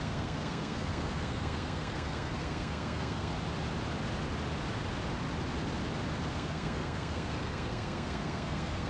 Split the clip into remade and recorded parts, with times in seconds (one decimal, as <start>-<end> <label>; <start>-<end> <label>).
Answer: 0.0-3.3 remade; 3.3-6.3 recorded; 6.3-8.9 remade